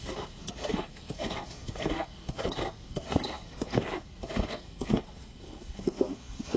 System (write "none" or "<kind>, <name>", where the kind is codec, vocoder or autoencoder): codec, SNAC